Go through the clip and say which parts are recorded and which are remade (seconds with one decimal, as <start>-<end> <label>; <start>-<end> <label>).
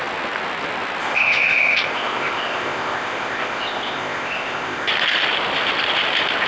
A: 0.0-1.0 recorded; 1.0-4.9 remade; 4.9-6.5 recorded